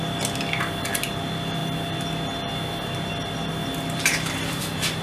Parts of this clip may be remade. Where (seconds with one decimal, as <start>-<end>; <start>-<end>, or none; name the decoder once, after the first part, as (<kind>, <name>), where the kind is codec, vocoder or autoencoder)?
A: none